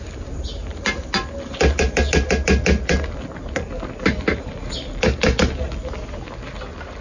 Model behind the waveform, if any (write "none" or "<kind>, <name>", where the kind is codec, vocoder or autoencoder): none